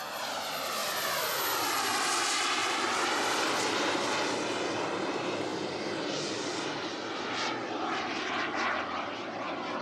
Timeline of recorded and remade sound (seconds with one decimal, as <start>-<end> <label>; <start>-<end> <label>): 0.0-0.8 recorded; 0.8-1.4 remade; 1.4-2.6 recorded; 2.6-3.6 remade; 3.6-5.5 recorded; 5.5-6.8 remade; 6.8-9.8 recorded